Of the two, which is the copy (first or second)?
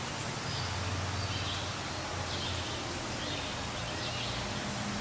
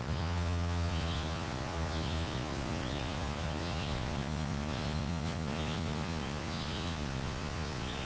second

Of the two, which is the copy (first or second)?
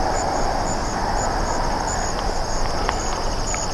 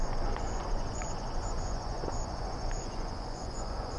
second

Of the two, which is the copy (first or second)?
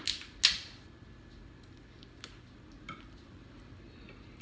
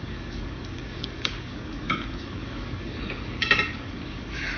second